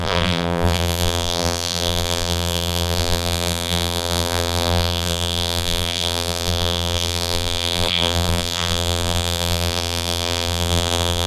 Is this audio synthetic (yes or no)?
yes